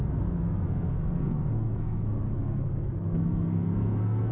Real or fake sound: fake